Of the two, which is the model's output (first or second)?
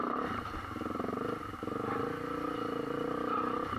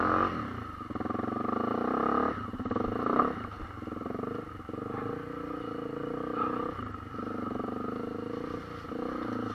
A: first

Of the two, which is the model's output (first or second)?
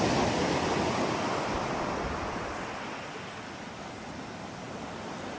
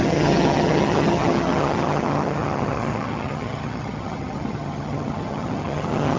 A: second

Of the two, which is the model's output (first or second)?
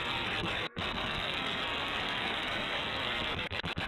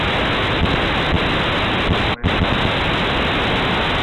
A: first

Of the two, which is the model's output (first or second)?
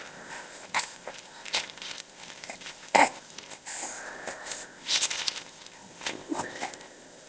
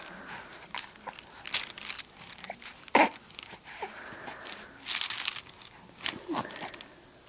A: first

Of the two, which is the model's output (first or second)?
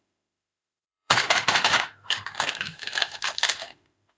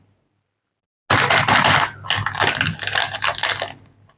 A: first